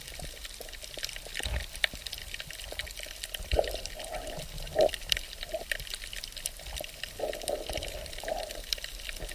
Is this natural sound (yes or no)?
yes